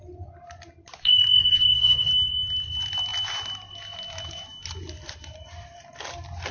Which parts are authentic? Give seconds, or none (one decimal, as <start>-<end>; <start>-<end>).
0.0-1.4; 2.1-6.5